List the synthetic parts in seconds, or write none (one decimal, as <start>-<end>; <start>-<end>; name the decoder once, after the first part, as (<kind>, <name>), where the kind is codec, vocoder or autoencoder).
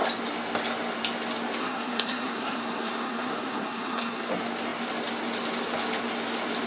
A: 1.6-4.3 (codec, SNAC)